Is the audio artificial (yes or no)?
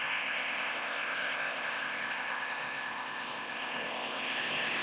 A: yes